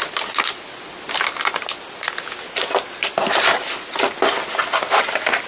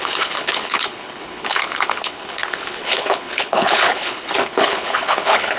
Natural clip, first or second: first